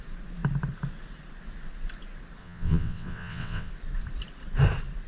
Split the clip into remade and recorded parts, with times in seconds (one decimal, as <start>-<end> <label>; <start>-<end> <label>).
0.0-2.4 recorded; 2.4-3.7 remade; 3.7-5.1 recorded